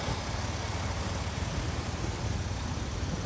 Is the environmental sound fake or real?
real